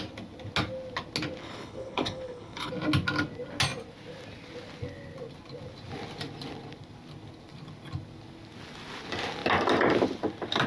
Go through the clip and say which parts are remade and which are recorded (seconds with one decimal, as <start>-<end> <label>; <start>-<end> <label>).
0.0-1.4 recorded; 1.4-2.7 remade; 2.7-10.7 recorded